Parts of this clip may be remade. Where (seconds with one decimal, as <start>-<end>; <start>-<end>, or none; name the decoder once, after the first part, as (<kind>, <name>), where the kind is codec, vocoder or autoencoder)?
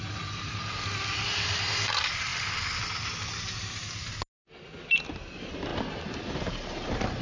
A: none